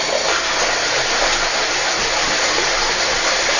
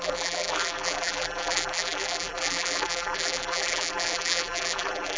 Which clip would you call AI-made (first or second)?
second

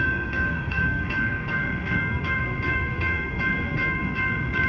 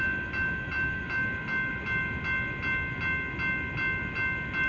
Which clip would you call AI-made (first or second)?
first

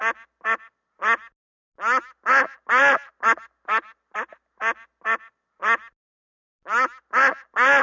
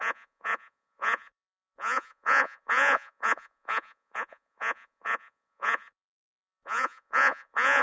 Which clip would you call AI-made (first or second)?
second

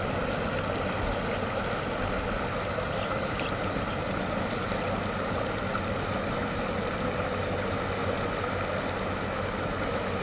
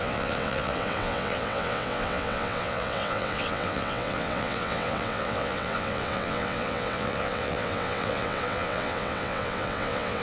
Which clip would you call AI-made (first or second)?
second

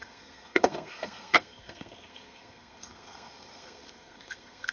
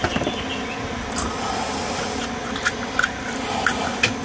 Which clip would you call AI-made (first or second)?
first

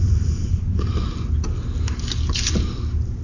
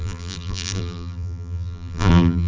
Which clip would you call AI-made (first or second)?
second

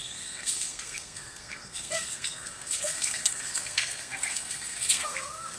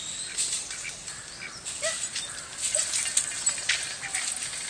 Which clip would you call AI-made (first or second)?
first